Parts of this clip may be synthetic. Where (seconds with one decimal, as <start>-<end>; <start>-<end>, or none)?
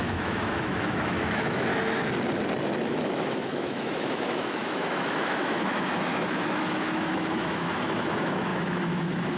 0.0-1.7; 2.8-9.4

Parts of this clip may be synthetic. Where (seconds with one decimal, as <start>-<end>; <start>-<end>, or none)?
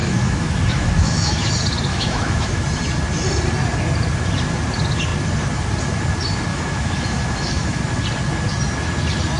0.0-1.5; 1.9-2.6; 6.5-7.8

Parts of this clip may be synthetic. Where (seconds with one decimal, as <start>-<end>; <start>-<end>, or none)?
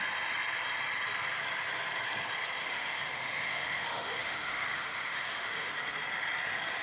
2.6-5.7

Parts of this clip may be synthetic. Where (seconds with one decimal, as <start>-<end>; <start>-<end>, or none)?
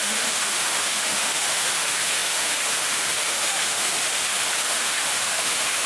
0.0-5.9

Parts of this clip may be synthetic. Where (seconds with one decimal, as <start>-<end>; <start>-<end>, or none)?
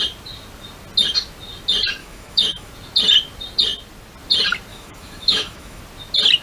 2.0-2.7; 4.7-5.8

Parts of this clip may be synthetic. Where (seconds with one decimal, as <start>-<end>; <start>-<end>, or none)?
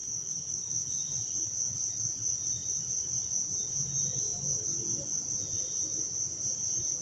0.0-1.1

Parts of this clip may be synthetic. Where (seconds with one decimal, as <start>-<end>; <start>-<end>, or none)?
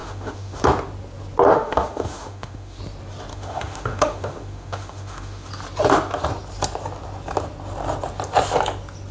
0.0-0.6; 1.5-2.8; 3.3-5.5